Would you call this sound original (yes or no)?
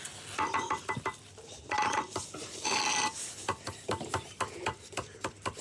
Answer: yes